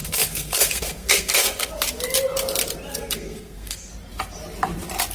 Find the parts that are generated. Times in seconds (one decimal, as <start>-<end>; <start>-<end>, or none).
0.0-1.7; 2.9-3.9